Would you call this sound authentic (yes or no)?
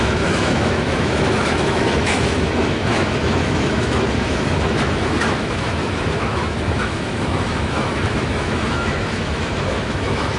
no